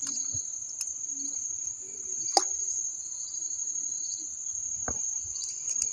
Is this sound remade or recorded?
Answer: recorded